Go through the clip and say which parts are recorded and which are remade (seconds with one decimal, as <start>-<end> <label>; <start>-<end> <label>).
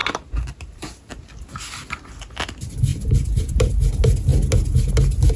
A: 0.0-1.1 remade; 1.1-2.9 recorded; 2.9-3.7 remade; 3.7-5.4 recorded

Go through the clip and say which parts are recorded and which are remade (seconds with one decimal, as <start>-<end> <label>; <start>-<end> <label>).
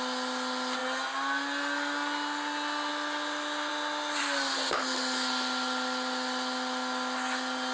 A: 0.0-7.7 recorded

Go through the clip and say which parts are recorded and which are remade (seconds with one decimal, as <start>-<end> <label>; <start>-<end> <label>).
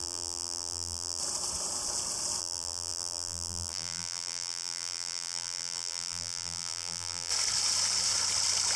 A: 0.0-1.2 remade; 1.2-2.4 recorded; 2.4-7.3 remade; 7.3-8.8 recorded